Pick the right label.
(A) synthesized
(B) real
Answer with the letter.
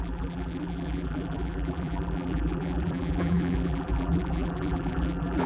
A